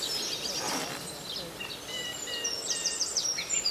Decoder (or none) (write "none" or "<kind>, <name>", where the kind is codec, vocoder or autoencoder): none